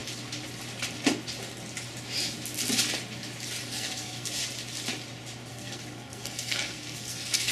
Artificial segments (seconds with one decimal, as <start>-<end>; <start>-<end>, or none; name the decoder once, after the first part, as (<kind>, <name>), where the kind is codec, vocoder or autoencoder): 3.7-4.4 (codec, SNAC); 5.5-7.5